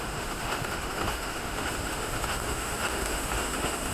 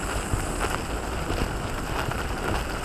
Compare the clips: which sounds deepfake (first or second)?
first